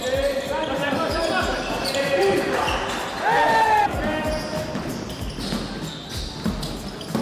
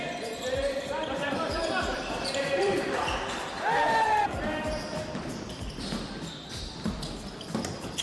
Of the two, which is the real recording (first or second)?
first